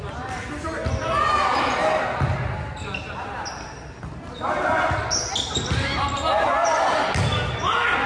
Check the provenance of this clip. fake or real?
real